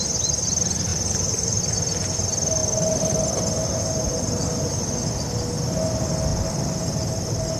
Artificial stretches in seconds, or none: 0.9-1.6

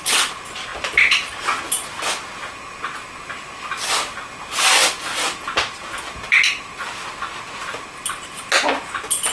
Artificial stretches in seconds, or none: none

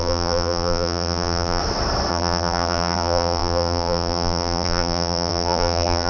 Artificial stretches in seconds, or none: 0.0-1.6; 2.1-6.1

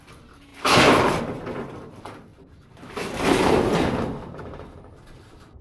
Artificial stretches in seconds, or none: 0.0-5.6

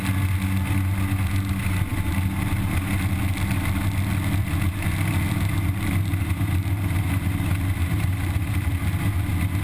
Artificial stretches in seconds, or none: 7.8-9.1

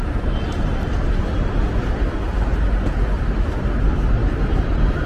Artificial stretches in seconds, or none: 3.1-5.1